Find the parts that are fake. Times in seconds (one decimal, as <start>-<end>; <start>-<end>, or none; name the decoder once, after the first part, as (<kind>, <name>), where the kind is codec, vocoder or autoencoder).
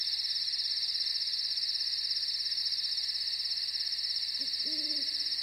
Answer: none